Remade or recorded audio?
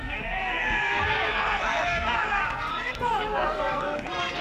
remade